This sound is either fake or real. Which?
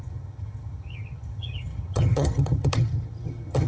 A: fake